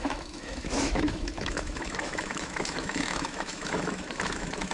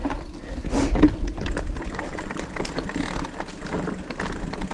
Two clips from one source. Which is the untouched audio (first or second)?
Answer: second